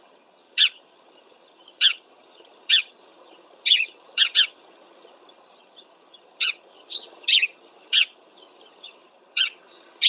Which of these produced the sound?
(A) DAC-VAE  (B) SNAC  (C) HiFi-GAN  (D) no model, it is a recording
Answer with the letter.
C